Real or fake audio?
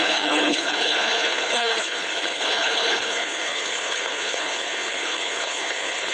fake